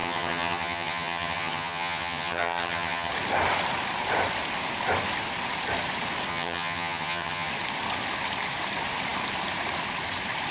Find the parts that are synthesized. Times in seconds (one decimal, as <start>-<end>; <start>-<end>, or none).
0.0-3.1; 6.3-7.5